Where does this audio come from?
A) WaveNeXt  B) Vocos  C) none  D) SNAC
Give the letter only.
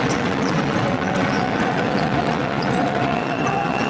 A